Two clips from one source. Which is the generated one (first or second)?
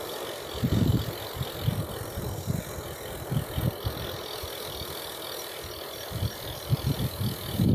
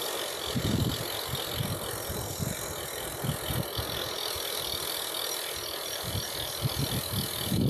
first